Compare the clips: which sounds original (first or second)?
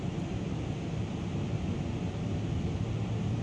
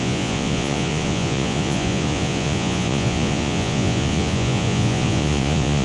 first